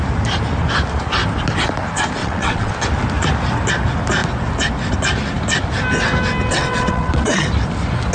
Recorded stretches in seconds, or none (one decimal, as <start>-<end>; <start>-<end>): 0.0-2.2; 2.7-6.5; 7.4-8.1